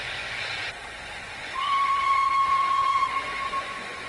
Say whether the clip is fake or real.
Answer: fake